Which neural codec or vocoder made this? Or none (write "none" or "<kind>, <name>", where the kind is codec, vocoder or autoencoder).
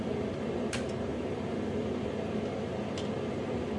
none